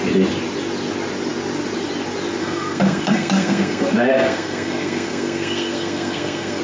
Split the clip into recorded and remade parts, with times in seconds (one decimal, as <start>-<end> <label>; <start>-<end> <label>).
0.0-2.4 recorded; 2.4-6.6 remade